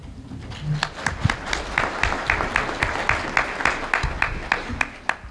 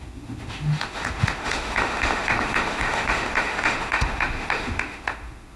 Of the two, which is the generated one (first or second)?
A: second